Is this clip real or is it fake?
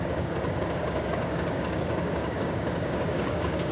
fake